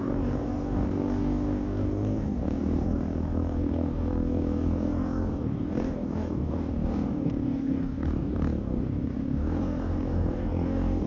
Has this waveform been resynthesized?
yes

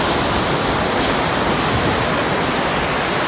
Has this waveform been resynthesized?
no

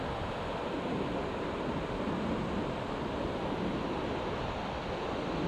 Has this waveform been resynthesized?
no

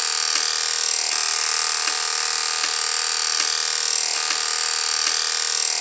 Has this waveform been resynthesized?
no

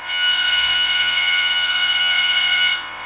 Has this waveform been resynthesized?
yes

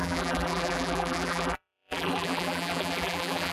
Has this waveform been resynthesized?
yes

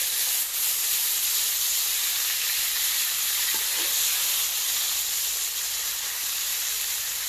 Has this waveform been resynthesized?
no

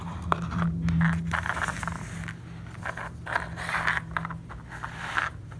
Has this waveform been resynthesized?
no